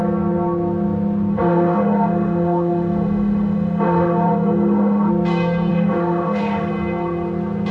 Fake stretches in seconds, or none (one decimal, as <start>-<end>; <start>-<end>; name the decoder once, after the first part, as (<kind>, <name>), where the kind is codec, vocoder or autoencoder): 1.3-5.1 (autoencoder, DAC-VAE); 5.7-6.7